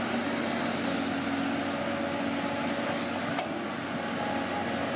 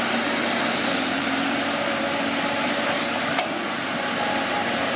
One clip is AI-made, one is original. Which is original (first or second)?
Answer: first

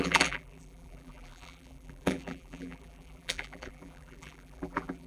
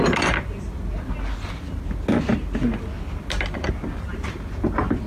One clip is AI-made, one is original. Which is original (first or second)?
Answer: second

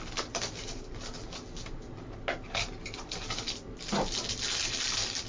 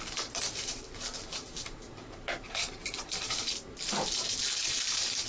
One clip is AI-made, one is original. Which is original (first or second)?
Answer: first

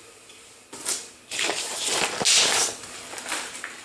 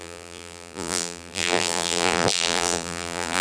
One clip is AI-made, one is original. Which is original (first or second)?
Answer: first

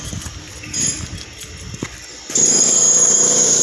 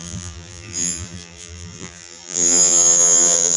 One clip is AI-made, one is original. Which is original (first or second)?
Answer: first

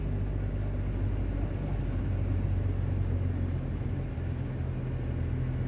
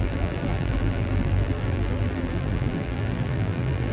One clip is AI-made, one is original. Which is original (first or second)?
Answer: first